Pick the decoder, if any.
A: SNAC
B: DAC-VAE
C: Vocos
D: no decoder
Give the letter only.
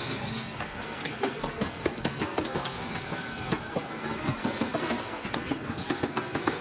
A